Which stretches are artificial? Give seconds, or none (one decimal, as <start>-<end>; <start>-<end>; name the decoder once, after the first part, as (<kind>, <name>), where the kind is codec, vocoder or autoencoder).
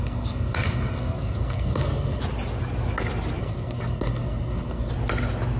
0.0-2.2 (codec, SNAC); 3.4-4.9